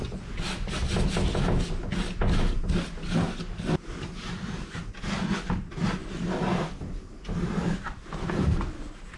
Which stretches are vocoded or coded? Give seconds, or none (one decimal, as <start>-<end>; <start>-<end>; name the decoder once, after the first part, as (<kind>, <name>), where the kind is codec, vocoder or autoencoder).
none